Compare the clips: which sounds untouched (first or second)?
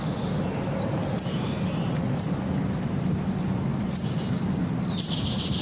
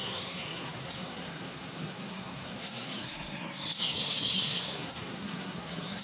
first